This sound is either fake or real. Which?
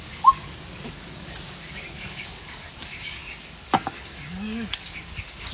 fake